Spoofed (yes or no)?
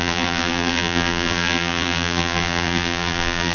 yes